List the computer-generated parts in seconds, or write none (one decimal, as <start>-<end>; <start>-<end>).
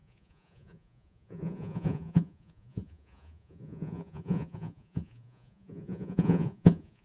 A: 0.0-7.0